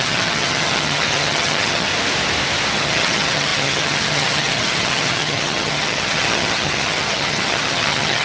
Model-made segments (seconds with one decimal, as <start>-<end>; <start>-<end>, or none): 0.0-1.9; 2.7-8.2